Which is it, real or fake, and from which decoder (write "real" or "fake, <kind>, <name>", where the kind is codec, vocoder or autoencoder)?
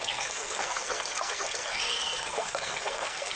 fake, codec, SNAC